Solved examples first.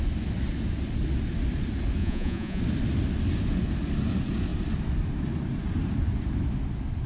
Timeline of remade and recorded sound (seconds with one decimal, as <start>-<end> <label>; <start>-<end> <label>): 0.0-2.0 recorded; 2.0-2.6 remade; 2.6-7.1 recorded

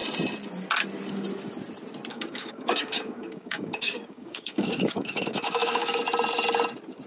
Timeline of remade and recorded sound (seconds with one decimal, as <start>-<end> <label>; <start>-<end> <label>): 0.0-2.1 recorded; 2.1-6.0 remade; 6.0-7.1 recorded

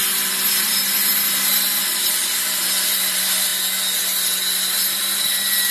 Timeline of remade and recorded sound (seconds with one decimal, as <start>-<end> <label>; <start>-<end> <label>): 0.0-5.7 recorded

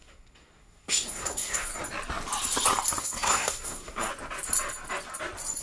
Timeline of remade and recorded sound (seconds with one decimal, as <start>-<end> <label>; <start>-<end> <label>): 0.0-1.7 remade; 1.7-3.0 recorded; 3.0-4.1 remade; 4.1-5.6 recorded